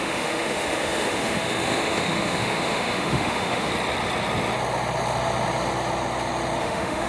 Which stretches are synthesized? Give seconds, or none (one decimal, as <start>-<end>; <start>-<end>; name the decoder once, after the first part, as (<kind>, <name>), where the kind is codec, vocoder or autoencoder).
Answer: 0.0-3.7 (autoencoder, DAC-VAE); 6.6-7.1